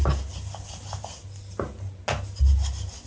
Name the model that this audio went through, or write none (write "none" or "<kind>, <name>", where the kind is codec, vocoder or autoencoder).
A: none